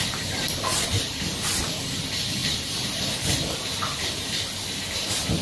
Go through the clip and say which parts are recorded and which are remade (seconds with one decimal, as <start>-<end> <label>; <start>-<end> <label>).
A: 0.0-2.4 remade; 2.4-3.0 recorded; 3.0-5.4 remade